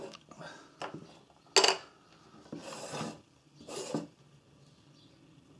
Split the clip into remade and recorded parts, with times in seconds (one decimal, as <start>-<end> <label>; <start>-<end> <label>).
0.0-5.6 recorded